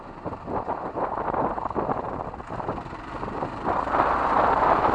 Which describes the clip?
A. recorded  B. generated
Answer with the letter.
A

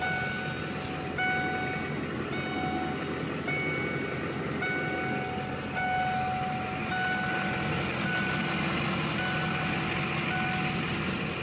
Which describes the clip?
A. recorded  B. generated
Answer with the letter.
A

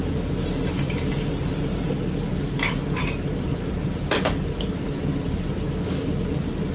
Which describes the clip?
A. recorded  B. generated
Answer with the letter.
A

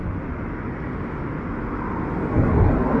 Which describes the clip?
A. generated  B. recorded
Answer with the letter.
B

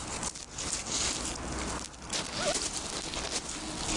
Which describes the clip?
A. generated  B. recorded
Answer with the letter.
B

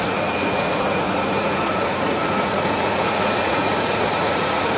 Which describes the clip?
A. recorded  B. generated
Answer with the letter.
B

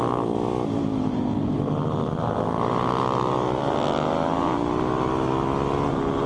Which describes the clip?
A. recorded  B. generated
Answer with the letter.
A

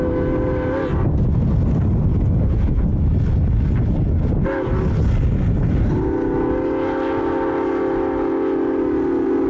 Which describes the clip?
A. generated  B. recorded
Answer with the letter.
B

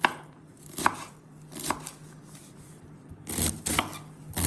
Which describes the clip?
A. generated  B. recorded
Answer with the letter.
B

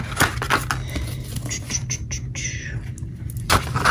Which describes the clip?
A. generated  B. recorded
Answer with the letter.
B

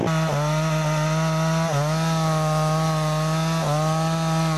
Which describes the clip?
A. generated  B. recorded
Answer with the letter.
B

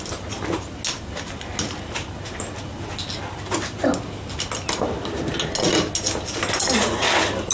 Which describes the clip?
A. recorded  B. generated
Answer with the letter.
A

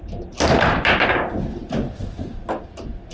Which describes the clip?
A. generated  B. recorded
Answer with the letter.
B